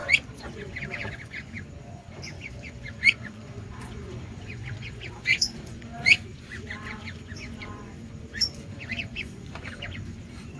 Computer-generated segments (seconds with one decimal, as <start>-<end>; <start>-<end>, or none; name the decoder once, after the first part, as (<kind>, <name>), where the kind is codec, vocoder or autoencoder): 0.0-10.6 (vocoder, Vocos)